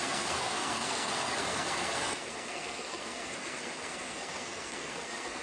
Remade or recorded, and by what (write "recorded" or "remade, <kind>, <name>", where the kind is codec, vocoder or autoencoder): remade, codec, SNAC